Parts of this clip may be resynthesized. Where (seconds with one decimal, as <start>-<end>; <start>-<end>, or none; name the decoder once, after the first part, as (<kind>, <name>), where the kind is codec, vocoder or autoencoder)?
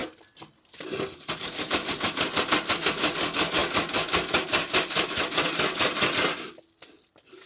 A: none